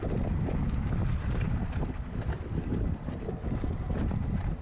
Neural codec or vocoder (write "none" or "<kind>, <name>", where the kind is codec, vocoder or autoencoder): none